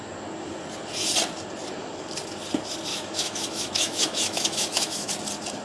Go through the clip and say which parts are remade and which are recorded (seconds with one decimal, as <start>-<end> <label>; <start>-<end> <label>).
0.0-2.9 recorded; 2.9-5.1 remade; 5.1-5.6 recorded